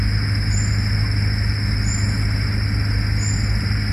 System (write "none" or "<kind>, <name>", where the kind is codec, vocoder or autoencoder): none